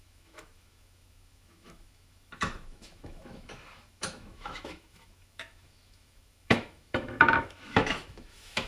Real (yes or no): no